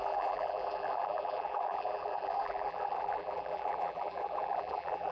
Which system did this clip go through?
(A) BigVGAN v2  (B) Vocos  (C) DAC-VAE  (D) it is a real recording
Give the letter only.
A